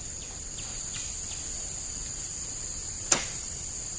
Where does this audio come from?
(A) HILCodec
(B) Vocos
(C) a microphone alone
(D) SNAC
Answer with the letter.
C